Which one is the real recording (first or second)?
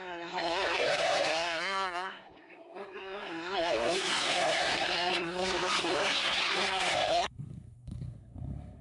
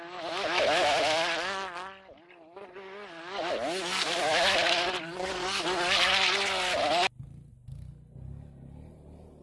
second